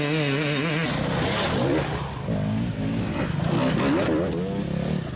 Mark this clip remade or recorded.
recorded